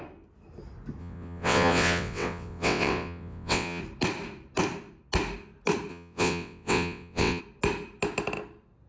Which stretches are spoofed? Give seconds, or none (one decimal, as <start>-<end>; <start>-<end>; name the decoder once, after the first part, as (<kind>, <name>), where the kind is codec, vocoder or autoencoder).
1.0-3.8 (vocoder, WaveNeXt); 5.9-7.4